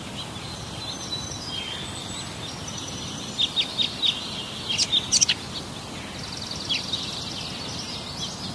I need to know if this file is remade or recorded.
recorded